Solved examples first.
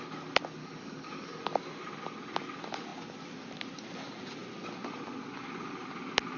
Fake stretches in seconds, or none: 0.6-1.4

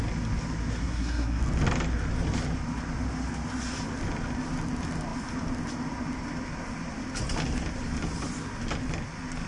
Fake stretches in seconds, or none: 0.8-1.4

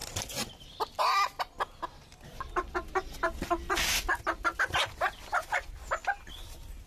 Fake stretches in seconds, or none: none

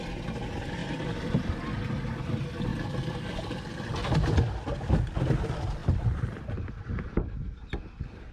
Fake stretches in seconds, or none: 2.7-3.8; 5.8-7.8

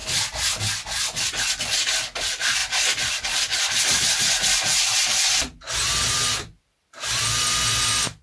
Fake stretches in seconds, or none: none

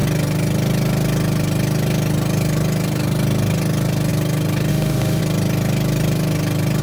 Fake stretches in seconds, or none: 4.7-5.2

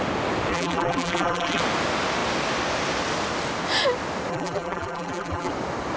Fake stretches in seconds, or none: 0.5-1.6; 4.3-5.5